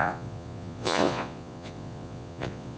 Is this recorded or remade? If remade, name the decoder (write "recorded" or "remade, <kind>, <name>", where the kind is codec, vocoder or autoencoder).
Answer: remade, vocoder, Vocos